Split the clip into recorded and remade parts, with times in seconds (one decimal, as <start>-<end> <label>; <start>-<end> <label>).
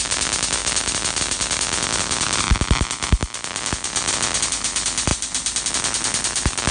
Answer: 0.0-6.7 recorded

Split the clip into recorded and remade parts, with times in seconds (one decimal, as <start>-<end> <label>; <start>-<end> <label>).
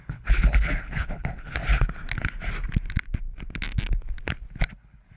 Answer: 0.0-1.6 remade; 1.6-4.7 recorded; 4.7-5.2 remade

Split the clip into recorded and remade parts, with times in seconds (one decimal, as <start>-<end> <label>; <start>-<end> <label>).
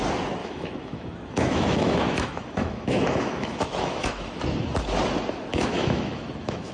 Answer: 0.0-0.4 recorded; 0.4-4.4 remade; 4.4-5.5 recorded; 5.5-6.7 remade